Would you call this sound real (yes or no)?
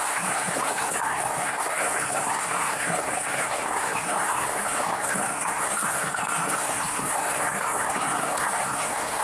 no